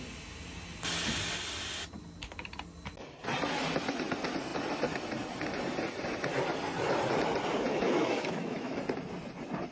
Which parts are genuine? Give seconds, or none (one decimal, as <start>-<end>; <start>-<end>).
0.0-7.7; 8.8-9.7

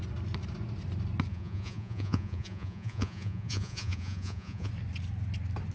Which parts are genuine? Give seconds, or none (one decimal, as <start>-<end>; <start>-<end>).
0.0-1.3; 4.7-5.7

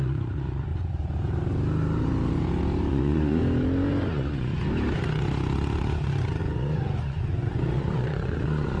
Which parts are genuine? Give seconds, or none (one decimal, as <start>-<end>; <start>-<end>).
0.7-2.9; 3.4-4.1; 4.5-6.4

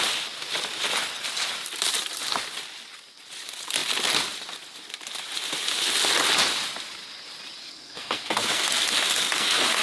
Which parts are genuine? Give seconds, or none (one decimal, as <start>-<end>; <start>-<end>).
0.0-7.6

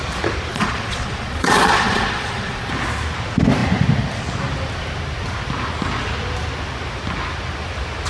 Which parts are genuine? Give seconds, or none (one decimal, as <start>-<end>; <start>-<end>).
0.0-0.5; 2.7-8.1

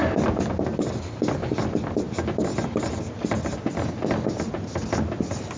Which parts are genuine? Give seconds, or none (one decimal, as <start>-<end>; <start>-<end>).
0.0-5.6